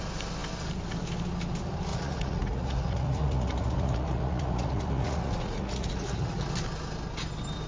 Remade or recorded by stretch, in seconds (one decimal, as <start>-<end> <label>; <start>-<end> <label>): 0.0-1.9 recorded; 1.9-6.5 remade; 6.5-7.7 recorded

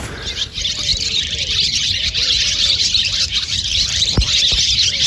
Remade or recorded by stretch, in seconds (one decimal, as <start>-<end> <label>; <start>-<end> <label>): 0.0-0.9 recorded; 0.9-4.0 remade; 4.0-5.1 recorded